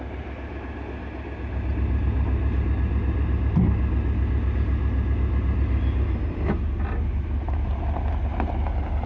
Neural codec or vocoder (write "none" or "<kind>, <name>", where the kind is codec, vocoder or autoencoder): none